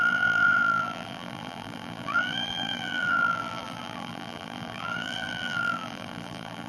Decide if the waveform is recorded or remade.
remade